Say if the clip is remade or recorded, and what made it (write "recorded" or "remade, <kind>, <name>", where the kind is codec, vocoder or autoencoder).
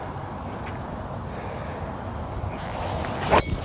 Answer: recorded